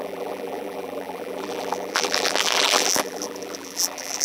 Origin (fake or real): fake